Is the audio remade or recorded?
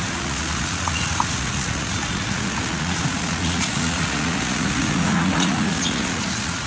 remade